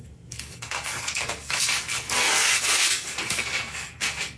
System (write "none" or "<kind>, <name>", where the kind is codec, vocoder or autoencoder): codec, SNAC